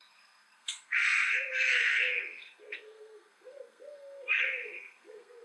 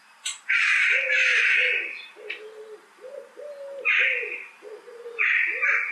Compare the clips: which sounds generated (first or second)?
first